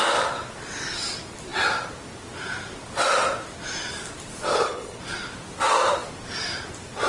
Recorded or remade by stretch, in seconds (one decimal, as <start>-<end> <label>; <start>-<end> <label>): 0.0-4.5 recorded; 4.5-5.0 remade; 5.0-7.1 recorded